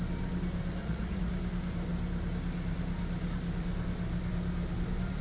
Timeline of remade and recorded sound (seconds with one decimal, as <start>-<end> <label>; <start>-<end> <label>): 0.0-0.8 recorded; 0.8-1.3 remade; 1.3-5.2 recorded